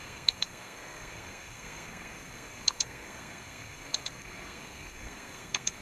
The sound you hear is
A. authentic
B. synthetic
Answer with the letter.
B